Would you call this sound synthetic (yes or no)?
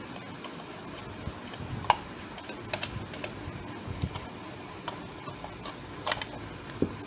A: no